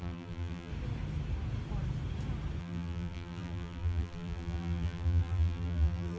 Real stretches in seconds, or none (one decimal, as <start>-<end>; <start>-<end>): 0.7-2.6